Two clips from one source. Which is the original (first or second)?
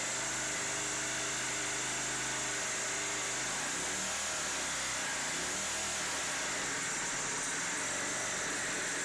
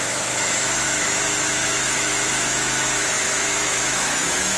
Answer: first